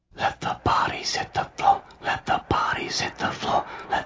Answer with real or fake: real